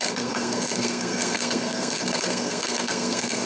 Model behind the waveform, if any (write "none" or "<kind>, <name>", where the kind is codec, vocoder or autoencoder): codec, SNAC